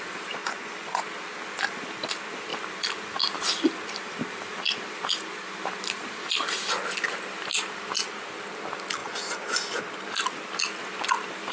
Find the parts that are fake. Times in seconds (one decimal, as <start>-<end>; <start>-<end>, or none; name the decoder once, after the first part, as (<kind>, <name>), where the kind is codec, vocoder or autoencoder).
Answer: 0.4-1.0 (vocoder, Vocos); 9.0-9.8